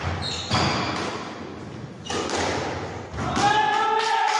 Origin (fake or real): real